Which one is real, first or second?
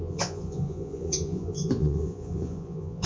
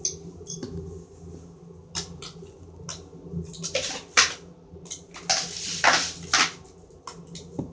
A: second